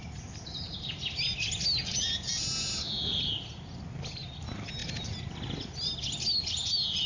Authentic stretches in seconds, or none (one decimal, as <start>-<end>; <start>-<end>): 0.0-1.8; 2.4-7.1